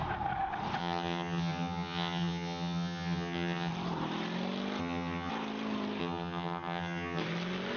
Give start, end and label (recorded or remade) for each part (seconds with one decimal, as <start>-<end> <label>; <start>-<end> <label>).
0.0-0.8 recorded; 0.8-3.7 remade; 3.7-4.8 recorded; 4.8-5.3 remade; 5.3-6.0 recorded; 6.0-7.2 remade; 7.2-7.8 recorded